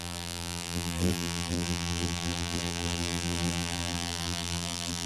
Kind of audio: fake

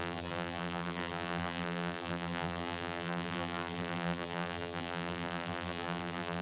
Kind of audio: fake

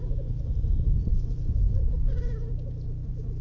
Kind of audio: real